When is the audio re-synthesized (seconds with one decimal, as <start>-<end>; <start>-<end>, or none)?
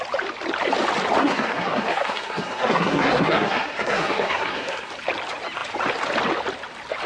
1.2-4.9